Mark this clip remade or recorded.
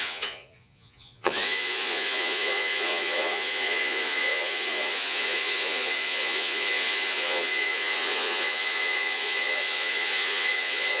remade